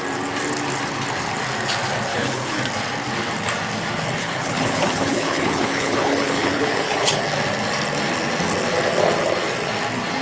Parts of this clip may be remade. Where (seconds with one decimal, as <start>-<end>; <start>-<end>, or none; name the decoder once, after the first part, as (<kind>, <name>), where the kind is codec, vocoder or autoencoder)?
2.1-2.6 (codec, HILCodec); 4.2-7.2